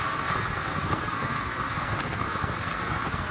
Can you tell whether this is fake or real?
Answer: fake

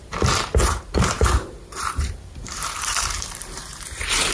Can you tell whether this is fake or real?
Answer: fake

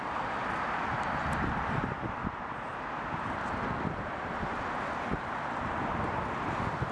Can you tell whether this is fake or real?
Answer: real